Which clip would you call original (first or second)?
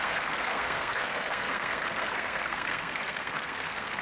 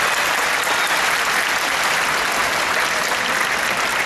second